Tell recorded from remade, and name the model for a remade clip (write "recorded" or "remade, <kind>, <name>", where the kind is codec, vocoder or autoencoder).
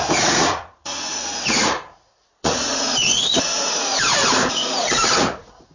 remade, vocoder, Vocos